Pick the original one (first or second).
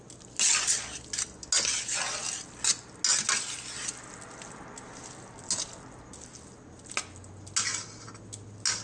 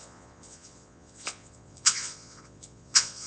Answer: first